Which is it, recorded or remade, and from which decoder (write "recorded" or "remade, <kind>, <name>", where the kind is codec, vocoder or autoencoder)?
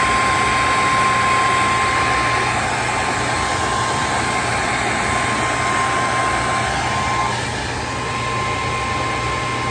recorded